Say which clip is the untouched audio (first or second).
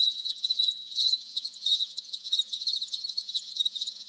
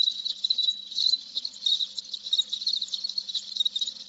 second